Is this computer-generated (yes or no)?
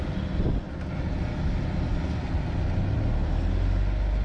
no